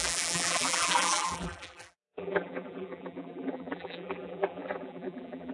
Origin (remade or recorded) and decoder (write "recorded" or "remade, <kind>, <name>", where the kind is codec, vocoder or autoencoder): remade, vocoder, BigVGAN v2